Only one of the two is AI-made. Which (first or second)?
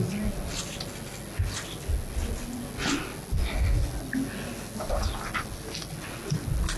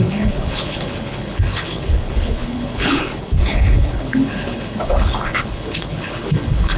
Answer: second